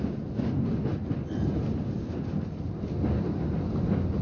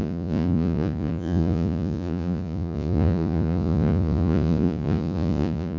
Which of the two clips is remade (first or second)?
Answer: second